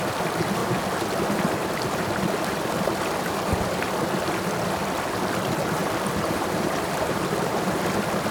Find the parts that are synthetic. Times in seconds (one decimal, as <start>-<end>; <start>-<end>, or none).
5.8-7.8